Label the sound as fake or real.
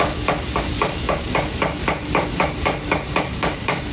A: fake